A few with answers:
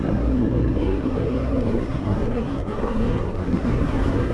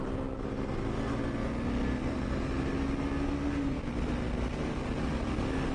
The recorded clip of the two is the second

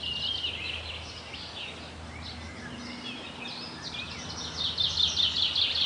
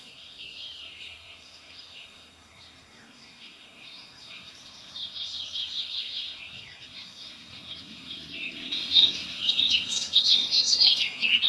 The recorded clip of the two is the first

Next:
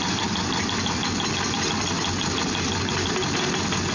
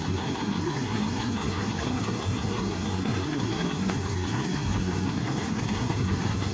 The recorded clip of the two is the first